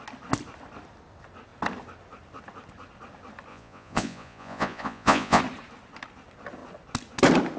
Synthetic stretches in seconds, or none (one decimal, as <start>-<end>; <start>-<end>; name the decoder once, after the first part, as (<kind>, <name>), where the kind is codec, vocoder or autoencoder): 3.5-5.4 (vocoder, Vocos)